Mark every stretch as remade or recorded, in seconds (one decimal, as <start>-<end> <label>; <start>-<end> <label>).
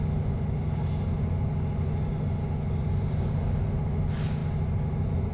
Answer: 0.0-5.3 recorded